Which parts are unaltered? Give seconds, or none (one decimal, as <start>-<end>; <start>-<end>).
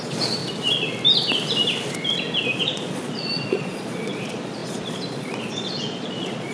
0.4-2.6